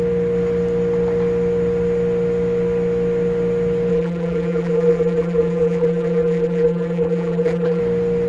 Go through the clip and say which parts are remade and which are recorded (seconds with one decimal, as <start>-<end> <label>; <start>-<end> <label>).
0.0-3.9 recorded; 3.9-7.8 remade; 7.8-8.3 recorded